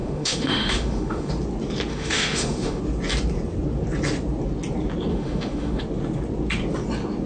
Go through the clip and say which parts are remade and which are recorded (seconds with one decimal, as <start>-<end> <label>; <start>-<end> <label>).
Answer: 0.0-1.3 remade; 1.3-1.9 recorded; 1.9-2.8 remade; 2.8-5.1 recorded; 5.1-5.8 remade; 5.8-7.3 recorded